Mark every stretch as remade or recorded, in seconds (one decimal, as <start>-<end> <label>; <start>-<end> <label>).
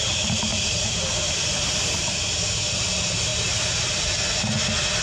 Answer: 0.0-0.5 recorded; 0.5-2.7 remade; 2.7-5.0 recorded